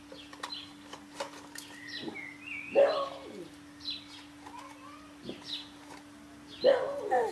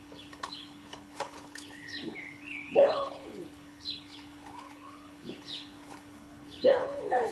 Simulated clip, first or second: second